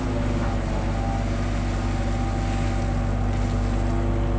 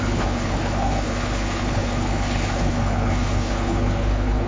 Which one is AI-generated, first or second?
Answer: second